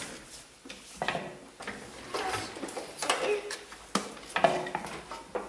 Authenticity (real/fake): real